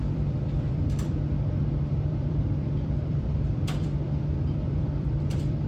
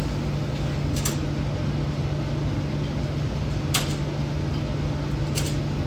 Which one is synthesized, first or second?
first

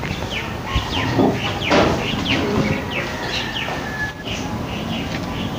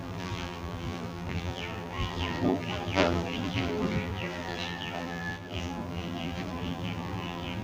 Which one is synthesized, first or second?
second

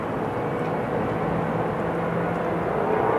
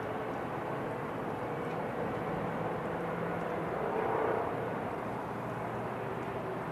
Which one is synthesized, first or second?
second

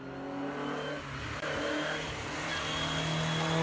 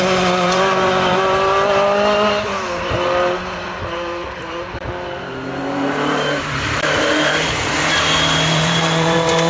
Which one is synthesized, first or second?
second